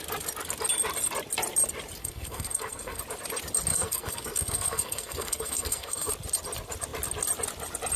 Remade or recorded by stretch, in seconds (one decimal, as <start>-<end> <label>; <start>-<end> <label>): 0.0-2.0 recorded; 2.0-3.0 remade; 3.0-3.7 recorded; 3.7-6.1 remade; 6.1-8.0 recorded